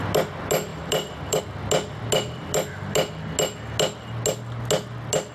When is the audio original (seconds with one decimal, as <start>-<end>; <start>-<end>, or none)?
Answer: 0.0-0.7; 1.4-5.3

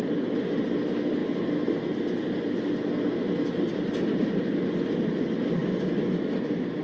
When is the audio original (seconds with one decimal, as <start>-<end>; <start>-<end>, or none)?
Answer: 0.0-6.8

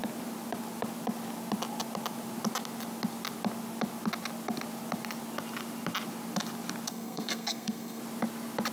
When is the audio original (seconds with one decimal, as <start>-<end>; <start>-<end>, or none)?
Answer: 0.0-6.9; 8.0-8.7

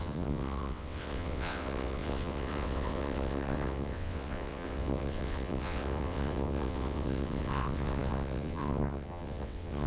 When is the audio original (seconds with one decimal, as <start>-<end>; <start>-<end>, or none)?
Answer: none

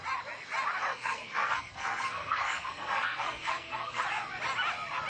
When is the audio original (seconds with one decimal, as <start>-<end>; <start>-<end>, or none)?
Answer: 0.0-0.9; 4.0-5.1

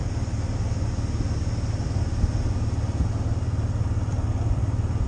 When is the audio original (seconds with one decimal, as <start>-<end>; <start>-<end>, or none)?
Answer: 0.0-3.1